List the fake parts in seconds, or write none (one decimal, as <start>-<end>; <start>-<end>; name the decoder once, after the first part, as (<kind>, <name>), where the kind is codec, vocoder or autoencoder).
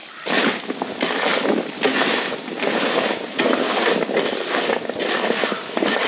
0.0-0.5 (vocoder, BigVGAN v2)